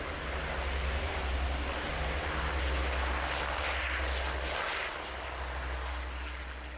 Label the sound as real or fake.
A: real